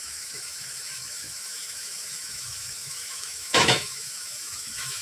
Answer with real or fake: fake